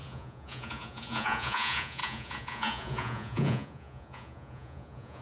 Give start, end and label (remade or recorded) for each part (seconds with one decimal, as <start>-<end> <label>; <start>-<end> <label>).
0.0-5.2 remade